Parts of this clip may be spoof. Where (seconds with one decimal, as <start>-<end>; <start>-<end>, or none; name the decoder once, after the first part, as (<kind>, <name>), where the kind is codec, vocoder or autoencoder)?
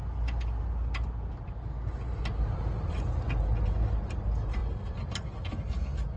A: none